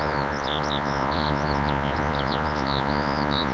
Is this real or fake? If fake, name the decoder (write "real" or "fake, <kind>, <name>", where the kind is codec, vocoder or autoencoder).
fake, vocoder, Vocos